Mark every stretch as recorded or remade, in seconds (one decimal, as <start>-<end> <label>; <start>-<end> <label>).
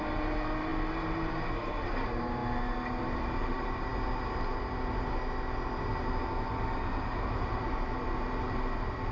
0.0-2.4 remade; 2.4-3.0 recorded; 3.0-3.9 remade; 3.9-9.1 recorded